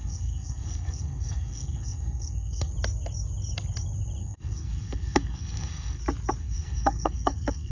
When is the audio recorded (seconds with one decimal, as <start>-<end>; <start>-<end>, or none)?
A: 2.7-4.2; 6.0-6.4